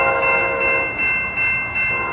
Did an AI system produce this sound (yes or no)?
no